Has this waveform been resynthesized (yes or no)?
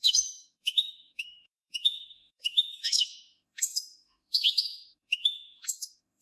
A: yes